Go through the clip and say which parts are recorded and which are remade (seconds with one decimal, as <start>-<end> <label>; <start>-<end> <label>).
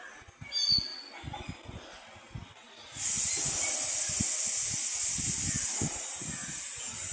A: 0.0-7.1 recorded